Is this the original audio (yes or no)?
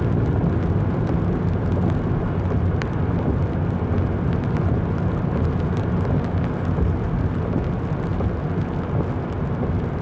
yes